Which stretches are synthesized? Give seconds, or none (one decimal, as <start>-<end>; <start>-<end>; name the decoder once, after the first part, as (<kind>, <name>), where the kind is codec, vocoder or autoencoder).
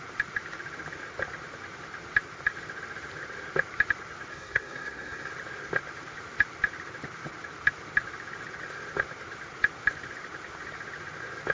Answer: 4.3-5.3 (codec, SNAC)